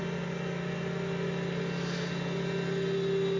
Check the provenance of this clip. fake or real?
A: real